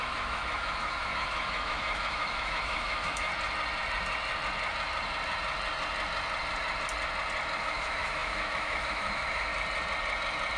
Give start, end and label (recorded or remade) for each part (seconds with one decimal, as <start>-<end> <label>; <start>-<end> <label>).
0.0-3.3 remade; 3.3-7.6 recorded; 7.6-9.5 remade; 9.5-10.6 recorded